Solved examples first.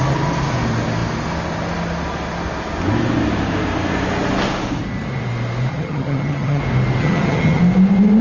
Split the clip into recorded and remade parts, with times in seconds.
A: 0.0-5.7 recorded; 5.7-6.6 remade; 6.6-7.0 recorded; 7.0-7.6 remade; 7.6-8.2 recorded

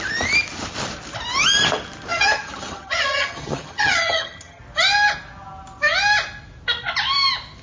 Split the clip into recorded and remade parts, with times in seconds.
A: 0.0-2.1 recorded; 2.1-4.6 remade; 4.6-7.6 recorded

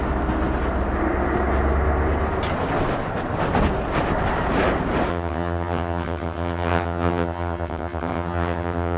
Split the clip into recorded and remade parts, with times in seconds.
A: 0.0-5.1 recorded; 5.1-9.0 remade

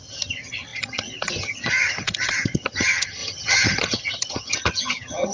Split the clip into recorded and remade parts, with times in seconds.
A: 0.0-5.3 remade

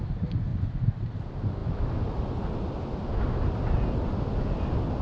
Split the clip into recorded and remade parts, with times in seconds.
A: 0.0-5.0 recorded